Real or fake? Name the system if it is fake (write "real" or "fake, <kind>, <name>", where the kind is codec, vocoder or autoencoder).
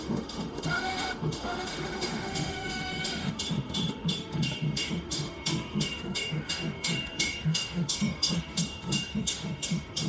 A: fake, autoencoder, DAC-VAE